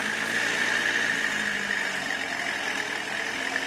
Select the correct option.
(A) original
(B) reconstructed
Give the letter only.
A